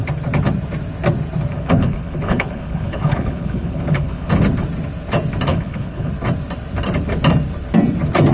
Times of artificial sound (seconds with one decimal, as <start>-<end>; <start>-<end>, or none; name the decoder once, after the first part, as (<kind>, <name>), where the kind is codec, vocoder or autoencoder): 1.5-4.3 (codec, HILCodec); 5.5-6.1